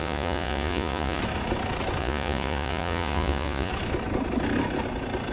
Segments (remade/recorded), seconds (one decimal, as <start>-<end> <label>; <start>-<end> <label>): 0.0-1.2 remade; 1.2-2.0 recorded; 2.0-3.7 remade; 3.7-5.3 recorded